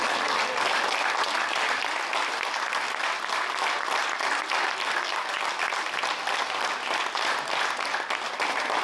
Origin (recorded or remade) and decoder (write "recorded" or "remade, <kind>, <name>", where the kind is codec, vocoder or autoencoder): recorded